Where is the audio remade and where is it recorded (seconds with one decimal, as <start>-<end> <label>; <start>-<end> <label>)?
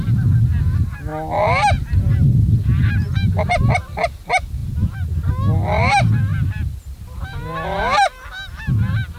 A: 0.0-4.6 recorded; 4.6-5.3 remade; 5.3-9.2 recorded